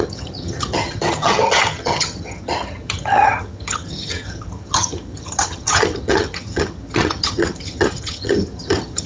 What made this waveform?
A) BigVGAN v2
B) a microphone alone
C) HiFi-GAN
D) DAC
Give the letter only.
C